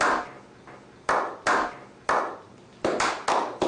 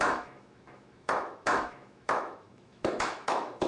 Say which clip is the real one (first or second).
first